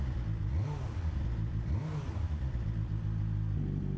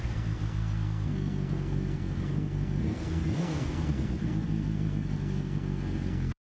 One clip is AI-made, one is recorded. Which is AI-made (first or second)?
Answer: second